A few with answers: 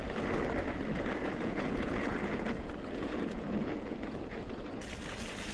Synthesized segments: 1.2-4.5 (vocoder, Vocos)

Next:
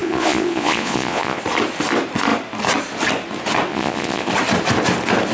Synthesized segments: 0.0-1.4 (vocoder, Vocos); 3.7-4.3

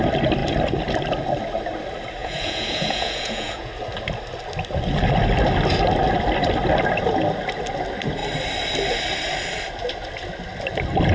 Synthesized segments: 2.2-3.7 (vocoder, Vocos)